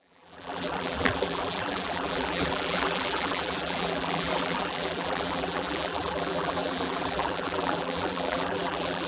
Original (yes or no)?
no